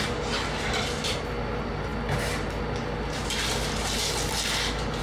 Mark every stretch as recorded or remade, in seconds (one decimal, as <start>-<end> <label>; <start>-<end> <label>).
0.0-5.0 recorded